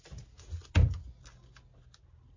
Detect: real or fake real